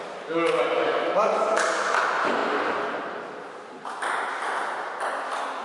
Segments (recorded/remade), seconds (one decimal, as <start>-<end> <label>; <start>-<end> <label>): 0.0-5.6 recorded